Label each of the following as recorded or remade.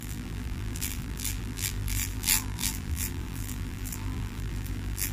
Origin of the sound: remade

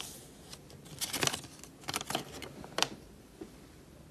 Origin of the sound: recorded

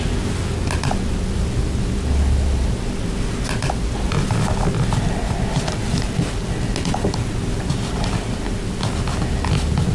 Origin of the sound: recorded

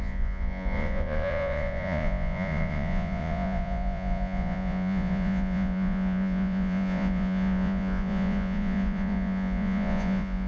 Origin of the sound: remade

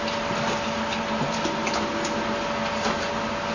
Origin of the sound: recorded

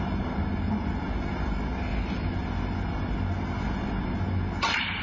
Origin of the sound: recorded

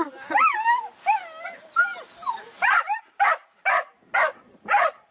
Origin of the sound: recorded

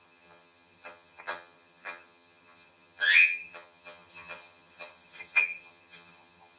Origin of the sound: remade